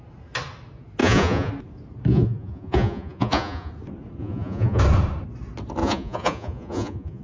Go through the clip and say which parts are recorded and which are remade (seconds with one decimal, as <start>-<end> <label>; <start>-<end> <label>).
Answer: 0.0-1.0 recorded; 1.0-1.5 remade; 1.5-2.1 recorded; 2.1-3.7 remade; 3.7-4.2 recorded; 4.2-4.8 remade; 4.8-5.8 recorded; 5.8-7.2 remade